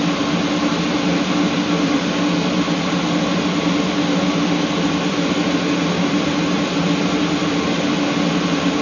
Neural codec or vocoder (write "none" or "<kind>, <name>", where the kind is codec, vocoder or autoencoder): none